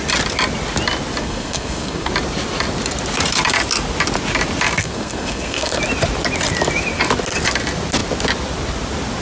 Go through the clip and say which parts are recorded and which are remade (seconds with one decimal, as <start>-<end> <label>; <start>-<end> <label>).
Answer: 0.0-1.2 recorded; 1.2-2.1 remade; 2.1-4.8 recorded; 4.8-5.8 remade; 5.8-9.2 recorded